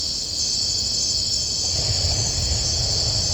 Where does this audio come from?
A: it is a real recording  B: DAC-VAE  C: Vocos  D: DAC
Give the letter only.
A